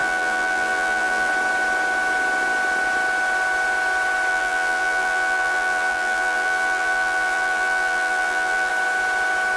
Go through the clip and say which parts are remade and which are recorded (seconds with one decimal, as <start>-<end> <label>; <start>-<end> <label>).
0.0-1.3 remade; 1.3-4.3 recorded; 4.3-8.7 remade; 8.7-9.6 recorded